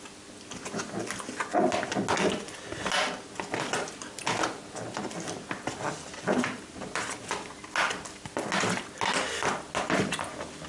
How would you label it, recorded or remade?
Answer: recorded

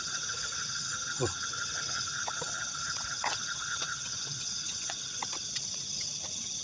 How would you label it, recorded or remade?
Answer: remade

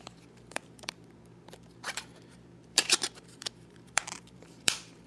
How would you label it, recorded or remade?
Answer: remade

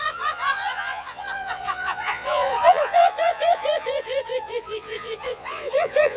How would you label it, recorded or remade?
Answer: remade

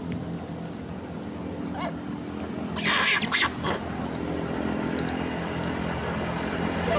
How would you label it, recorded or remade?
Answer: recorded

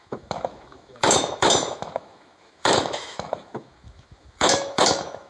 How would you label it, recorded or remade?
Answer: remade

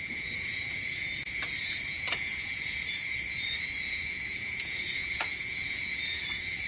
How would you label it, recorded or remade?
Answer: remade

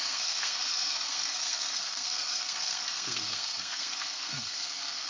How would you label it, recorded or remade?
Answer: remade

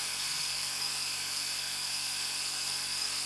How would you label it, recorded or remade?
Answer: remade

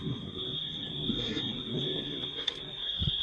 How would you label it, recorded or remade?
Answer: remade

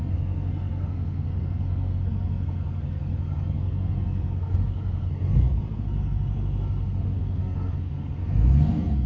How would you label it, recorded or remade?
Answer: remade